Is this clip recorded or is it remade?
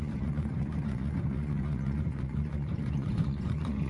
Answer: remade